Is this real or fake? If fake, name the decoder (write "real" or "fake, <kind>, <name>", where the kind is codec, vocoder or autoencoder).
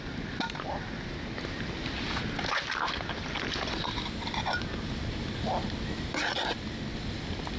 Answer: real